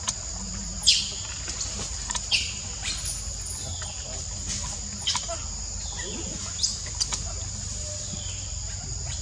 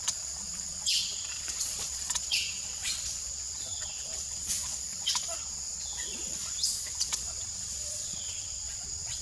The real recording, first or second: first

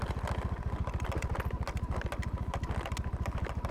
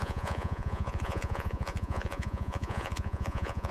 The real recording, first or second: first